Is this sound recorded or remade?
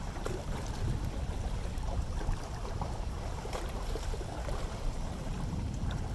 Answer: remade